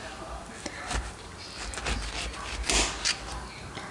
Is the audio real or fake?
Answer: real